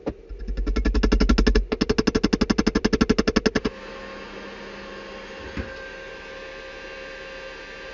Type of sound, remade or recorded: recorded